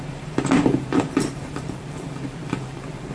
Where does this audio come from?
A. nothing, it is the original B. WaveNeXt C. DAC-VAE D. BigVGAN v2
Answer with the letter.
D